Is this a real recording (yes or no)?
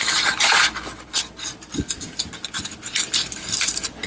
yes